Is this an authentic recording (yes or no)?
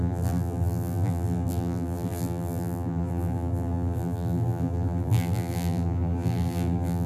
no